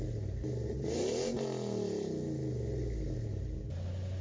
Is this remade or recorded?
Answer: recorded